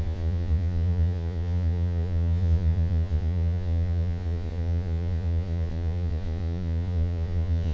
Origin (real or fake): fake